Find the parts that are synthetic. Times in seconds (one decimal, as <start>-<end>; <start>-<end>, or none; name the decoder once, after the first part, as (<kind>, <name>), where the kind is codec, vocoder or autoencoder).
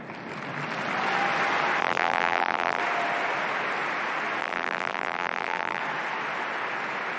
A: 1.8-2.8 (vocoder, BigVGAN v2); 4.4-5.8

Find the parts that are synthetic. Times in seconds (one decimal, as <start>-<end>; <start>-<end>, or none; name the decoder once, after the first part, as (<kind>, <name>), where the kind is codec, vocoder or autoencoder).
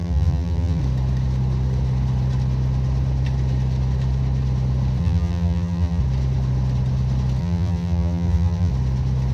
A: 0.0-0.8 (vocoder, BigVGAN v2); 5.0-6.0; 7.4-8.7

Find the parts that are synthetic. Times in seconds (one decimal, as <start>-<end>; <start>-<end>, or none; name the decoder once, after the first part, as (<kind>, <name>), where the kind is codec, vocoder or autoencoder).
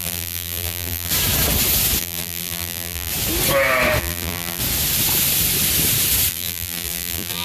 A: 0.0-1.1 (vocoder, BigVGAN v2); 2.0-3.1; 4.0-4.6; 6.3-7.4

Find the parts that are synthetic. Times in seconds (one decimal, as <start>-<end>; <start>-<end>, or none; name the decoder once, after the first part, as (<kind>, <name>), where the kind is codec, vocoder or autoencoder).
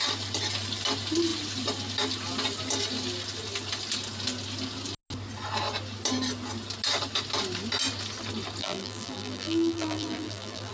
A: 8.6-10.7 (vocoder, BigVGAN v2)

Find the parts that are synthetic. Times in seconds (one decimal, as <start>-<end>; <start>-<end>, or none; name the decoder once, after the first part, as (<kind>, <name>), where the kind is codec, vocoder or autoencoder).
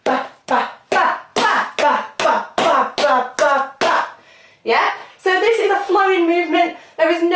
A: none